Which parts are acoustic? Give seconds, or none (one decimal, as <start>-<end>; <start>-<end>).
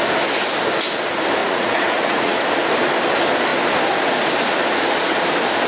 0.0-1.4; 2.4-5.7